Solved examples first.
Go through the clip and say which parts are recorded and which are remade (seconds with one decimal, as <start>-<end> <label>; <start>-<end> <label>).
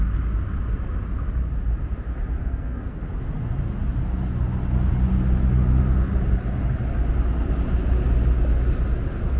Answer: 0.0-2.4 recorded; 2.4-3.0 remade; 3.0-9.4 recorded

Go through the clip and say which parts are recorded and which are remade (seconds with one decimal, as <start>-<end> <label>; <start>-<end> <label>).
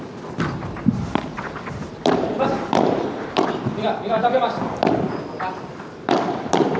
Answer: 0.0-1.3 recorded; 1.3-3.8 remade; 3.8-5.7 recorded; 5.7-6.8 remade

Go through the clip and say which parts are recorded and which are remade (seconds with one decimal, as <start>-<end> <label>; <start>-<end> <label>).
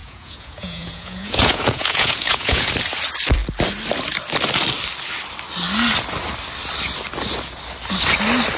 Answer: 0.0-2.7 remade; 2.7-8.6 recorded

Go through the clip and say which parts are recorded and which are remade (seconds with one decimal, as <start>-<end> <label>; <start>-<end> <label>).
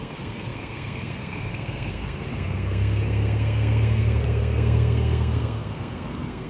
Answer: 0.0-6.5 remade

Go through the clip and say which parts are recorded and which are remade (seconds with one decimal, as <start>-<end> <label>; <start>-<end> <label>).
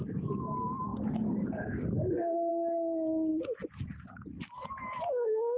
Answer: 0.0-5.6 recorded